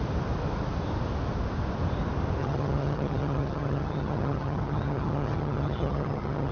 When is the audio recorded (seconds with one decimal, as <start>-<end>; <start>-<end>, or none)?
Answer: 0.0-2.4